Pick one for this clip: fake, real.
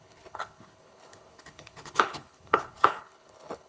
fake